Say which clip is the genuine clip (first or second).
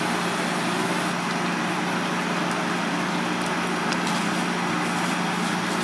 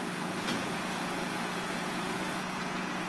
first